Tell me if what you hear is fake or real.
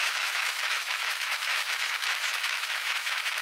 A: fake